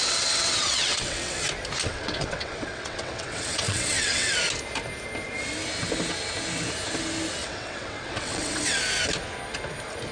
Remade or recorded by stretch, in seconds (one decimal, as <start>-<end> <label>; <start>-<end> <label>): 0.0-1.4 remade; 1.4-1.8 recorded; 1.8-4.3 remade; 4.3-7.4 recorded; 7.4-8.8 remade; 8.8-10.1 recorded